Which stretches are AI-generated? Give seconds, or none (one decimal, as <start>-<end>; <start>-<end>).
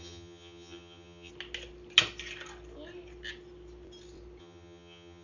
0.0-1.3; 4.4-5.2